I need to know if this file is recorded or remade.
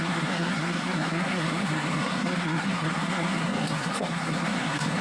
remade